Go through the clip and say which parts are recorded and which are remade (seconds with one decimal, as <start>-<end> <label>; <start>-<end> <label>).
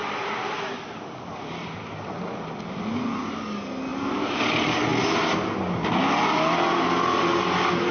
0.0-7.9 recorded